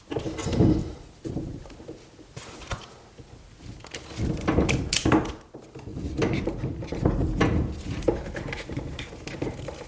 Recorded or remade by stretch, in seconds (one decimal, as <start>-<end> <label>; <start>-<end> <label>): 0.0-0.8 recorded; 0.8-1.6 remade; 1.6-9.9 recorded